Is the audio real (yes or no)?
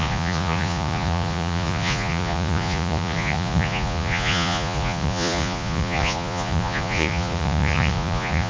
no